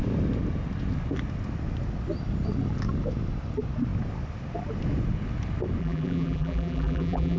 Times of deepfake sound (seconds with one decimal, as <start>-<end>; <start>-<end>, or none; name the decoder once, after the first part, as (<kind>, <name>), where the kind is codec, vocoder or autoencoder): 5.8-7.4 (vocoder, BigVGAN v2)